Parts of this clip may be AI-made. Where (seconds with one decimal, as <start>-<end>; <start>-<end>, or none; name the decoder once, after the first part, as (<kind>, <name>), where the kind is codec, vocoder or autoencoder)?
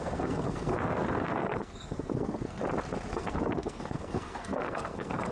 0.0-2.6 (codec, SNAC); 3.1-5.3